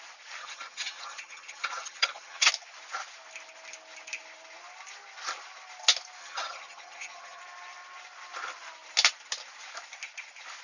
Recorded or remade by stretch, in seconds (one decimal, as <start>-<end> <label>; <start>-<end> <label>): 0.0-0.4 recorded; 0.4-2.5 remade; 2.5-6.2 recorded; 6.2-7.4 remade; 7.4-10.6 recorded